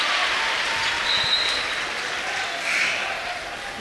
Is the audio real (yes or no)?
yes